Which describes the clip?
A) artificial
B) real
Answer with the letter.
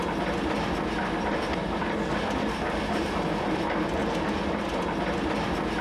B